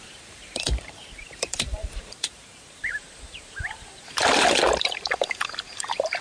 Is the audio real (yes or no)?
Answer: no